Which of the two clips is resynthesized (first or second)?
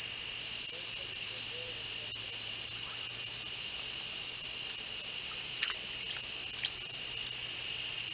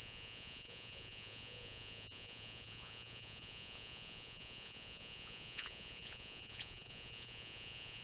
second